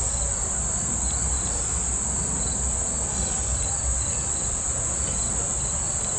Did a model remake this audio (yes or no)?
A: no